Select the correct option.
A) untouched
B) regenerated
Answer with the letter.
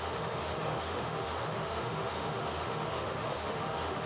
B